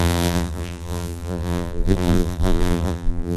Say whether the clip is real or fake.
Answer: fake